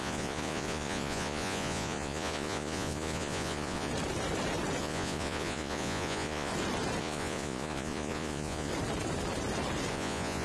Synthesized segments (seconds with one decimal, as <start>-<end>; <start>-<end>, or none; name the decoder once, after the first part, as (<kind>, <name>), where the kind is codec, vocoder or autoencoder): 0.0-3.9 (vocoder, Vocos); 4.8-6.5; 7.0-8.7; 9.9-10.4